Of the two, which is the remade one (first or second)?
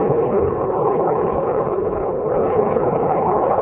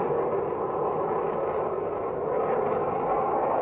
first